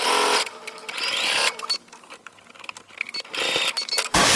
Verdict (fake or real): real